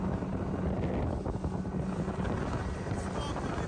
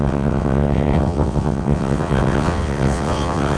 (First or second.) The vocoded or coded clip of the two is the second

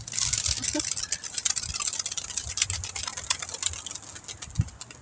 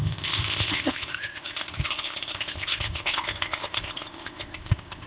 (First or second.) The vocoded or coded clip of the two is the second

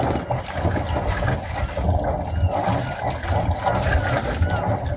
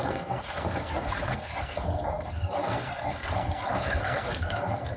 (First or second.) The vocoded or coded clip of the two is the second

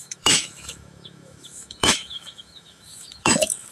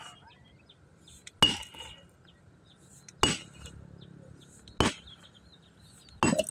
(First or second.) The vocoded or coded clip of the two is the first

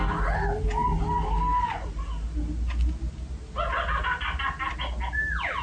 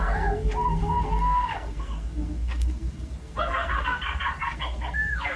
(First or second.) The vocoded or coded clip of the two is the second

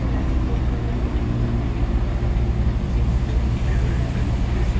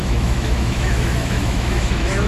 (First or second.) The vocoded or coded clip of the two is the second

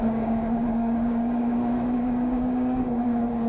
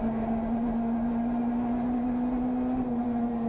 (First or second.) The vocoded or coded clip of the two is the first